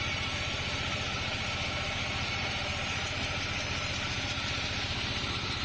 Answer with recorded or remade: remade